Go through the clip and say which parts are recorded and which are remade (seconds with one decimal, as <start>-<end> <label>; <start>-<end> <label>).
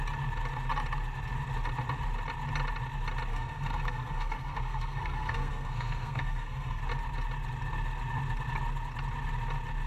0.0-3.3 recorded; 3.3-6.8 remade; 6.8-9.9 recorded